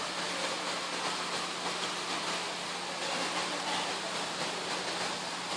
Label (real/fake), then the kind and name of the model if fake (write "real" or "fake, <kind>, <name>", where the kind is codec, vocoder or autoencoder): real